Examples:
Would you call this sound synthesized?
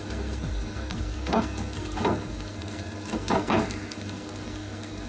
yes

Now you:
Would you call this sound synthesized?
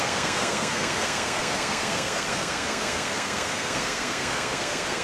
yes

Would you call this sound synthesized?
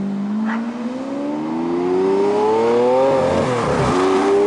no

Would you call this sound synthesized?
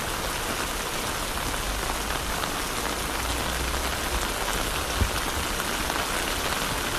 no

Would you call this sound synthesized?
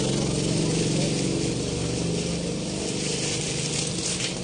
no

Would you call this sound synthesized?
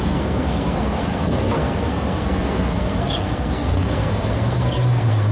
yes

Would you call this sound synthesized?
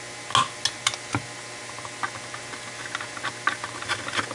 no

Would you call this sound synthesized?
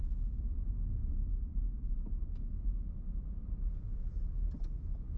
no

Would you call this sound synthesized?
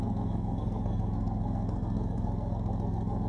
yes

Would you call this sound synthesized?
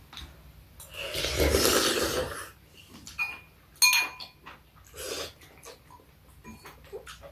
no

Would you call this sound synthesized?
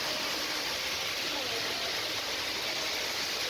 no